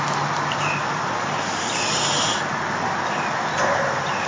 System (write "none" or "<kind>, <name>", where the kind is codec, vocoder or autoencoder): none